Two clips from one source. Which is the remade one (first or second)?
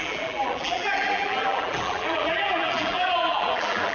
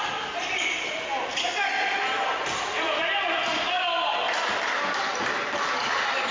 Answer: first